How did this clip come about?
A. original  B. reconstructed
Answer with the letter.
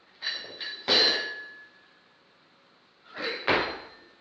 A